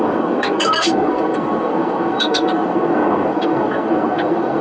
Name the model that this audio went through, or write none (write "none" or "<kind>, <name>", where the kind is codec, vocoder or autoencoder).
codec, SNAC